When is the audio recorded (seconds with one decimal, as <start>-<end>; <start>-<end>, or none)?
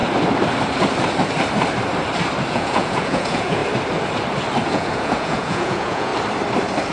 0.0-2.5; 3.6-4.7; 6.1-6.9